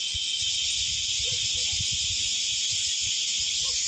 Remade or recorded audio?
recorded